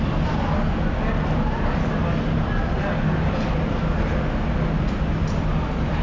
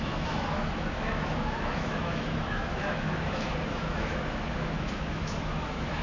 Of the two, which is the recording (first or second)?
first